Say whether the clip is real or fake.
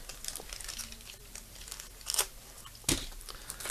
real